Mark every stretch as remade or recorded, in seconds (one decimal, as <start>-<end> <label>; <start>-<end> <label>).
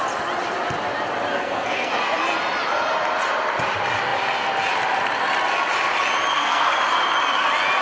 0.0-1.3 recorded; 1.3-1.9 remade; 1.9-6.3 recorded; 6.3-6.8 remade; 6.8-7.8 recorded